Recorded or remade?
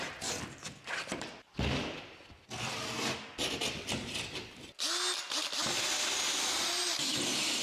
recorded